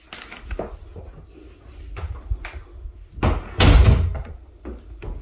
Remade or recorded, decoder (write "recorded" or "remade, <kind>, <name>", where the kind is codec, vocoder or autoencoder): recorded